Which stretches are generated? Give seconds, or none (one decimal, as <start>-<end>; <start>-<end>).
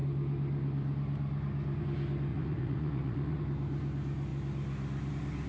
2.3-3.4